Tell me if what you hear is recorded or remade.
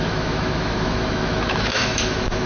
remade